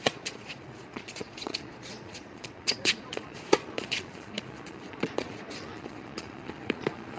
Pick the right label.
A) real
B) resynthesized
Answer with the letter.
B